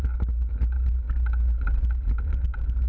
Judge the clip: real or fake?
real